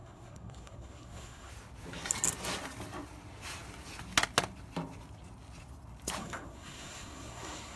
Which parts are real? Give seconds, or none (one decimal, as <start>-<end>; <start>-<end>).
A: 1.5-6.2